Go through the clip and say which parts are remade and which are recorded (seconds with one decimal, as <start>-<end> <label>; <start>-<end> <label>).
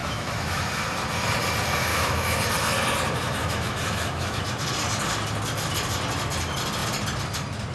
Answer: 0.0-0.6 remade; 0.6-1.9 recorded; 1.9-2.4 remade; 2.4-3.4 recorded; 3.4-4.4 remade; 4.4-7.7 recorded